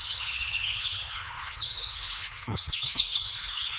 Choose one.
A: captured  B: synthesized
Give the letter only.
B